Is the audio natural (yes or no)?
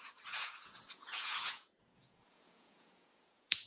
no